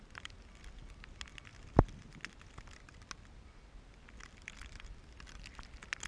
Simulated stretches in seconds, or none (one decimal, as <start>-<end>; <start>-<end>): none